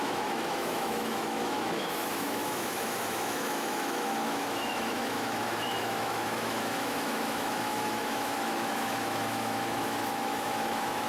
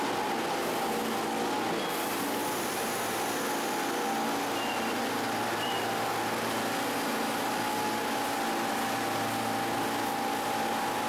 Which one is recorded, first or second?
second